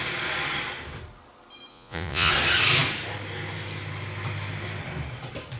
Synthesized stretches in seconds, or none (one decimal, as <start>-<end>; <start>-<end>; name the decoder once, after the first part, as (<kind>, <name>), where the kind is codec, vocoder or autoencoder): 1.7-2.3 (vocoder, Vocos)